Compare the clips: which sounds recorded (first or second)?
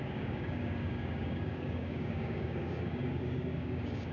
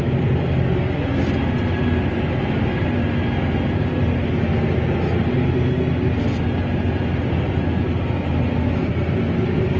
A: second